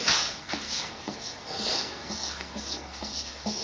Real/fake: fake